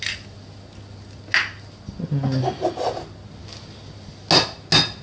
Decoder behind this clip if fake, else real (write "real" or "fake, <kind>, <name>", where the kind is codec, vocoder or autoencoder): real